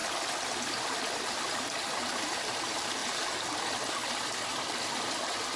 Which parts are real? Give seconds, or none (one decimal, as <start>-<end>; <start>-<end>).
0.0-5.6